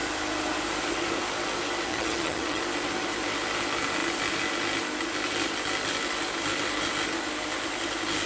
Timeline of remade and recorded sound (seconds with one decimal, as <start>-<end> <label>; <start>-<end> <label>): 0.0-1.9 recorded; 1.9-2.6 remade; 2.6-8.3 recorded